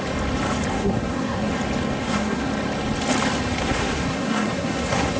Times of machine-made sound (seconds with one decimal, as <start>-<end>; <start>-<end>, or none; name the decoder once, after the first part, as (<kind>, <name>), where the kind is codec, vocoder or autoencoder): 0.7-1.5 (codec, SNAC); 2.0-2.5; 3.6-5.2